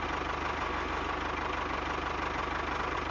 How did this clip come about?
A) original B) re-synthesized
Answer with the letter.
A